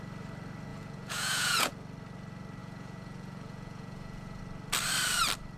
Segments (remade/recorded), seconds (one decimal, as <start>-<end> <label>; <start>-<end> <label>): 0.0-0.7 recorded; 0.7-1.7 remade; 1.7-2.6 recorded; 2.6-4.4 remade; 4.4-5.6 recorded